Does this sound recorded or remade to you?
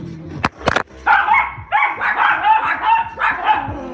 recorded